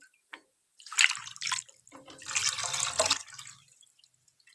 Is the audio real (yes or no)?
yes